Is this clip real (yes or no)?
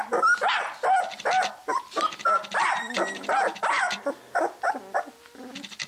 yes